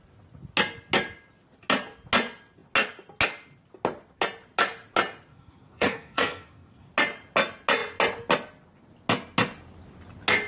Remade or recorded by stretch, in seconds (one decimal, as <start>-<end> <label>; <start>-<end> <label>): 0.0-5.3 recorded; 5.3-6.9 remade; 6.9-10.5 recorded